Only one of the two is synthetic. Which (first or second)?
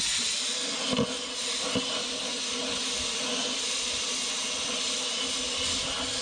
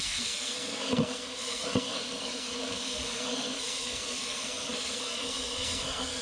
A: second